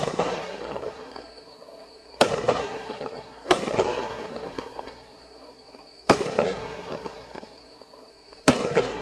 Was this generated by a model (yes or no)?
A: yes